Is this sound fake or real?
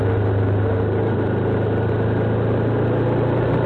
real